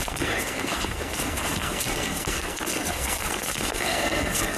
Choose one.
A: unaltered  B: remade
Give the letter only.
B